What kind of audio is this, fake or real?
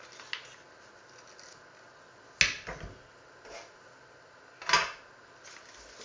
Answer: real